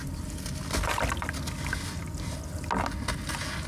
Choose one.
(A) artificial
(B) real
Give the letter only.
B